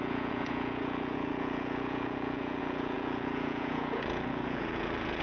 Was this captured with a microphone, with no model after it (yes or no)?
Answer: no